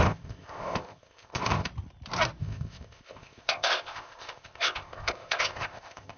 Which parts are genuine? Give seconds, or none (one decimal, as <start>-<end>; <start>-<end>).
1.7-2.4